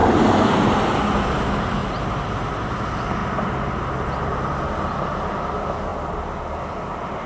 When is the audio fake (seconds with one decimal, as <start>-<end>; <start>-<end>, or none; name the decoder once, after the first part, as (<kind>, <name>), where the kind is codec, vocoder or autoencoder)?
1.8-2.7 (vocoder, BigVGAN v2); 3.2-4.5